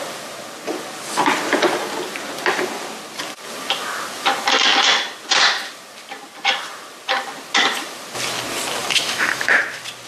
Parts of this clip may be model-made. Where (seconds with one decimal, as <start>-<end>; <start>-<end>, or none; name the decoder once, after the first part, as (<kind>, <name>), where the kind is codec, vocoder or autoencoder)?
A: 8.8-9.6 (autoencoder, DAC-VAE)